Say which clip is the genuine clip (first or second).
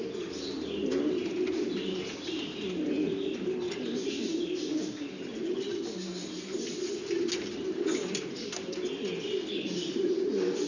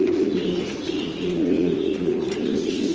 first